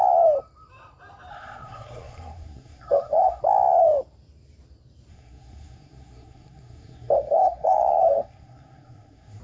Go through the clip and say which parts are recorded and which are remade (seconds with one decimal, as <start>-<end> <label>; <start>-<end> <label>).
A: 0.0-1.3 recorded; 1.3-3.4 remade; 3.4-5.1 recorded; 5.1-9.4 remade